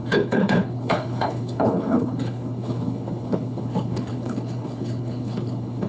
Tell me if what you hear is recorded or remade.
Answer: remade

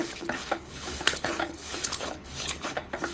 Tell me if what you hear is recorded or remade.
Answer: remade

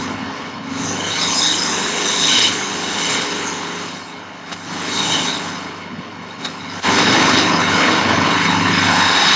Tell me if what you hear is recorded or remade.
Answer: remade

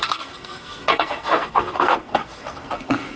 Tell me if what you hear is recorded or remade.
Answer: remade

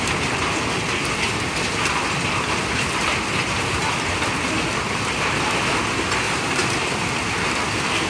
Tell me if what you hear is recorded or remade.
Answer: recorded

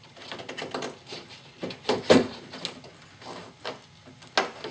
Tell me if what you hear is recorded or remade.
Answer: recorded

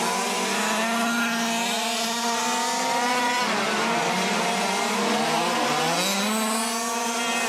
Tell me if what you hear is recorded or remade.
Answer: recorded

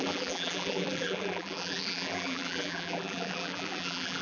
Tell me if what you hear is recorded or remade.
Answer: remade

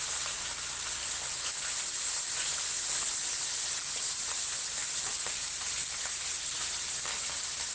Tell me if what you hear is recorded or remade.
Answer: remade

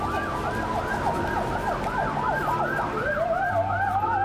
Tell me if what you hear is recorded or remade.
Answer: recorded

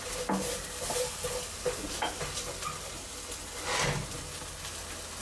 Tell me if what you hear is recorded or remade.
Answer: recorded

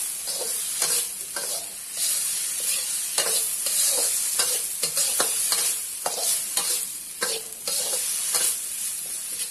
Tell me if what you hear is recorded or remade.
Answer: recorded